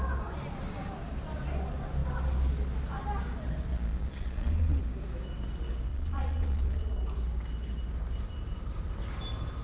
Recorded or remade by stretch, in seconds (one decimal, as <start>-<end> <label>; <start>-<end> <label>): 0.0-3.7 recorded; 3.7-4.8 remade; 4.8-5.9 recorded; 5.9-6.9 remade; 6.9-9.6 recorded